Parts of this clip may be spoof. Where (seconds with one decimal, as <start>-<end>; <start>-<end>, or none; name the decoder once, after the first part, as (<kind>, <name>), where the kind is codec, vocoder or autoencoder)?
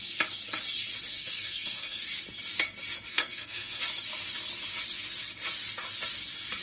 1.1-2.0 (codec, SNAC); 3.1-3.8